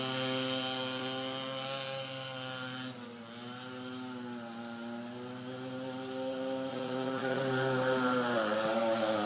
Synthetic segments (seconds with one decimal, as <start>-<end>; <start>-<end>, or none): 6.7-7.4